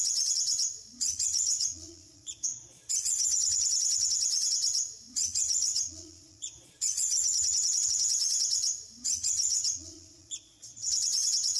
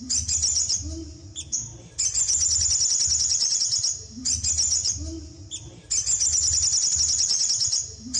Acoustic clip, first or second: second